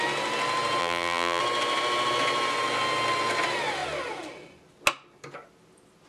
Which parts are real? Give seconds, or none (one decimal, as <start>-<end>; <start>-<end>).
0.0-0.8; 1.4-6.1